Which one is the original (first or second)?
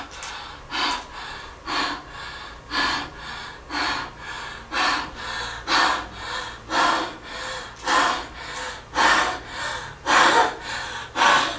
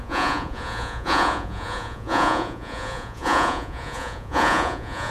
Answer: first